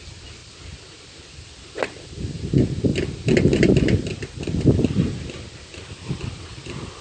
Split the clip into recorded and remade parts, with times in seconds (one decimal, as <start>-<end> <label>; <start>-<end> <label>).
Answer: 0.0-0.4 recorded; 0.4-2.2 remade; 2.2-2.9 recorded; 2.9-4.9 remade; 4.9-7.0 recorded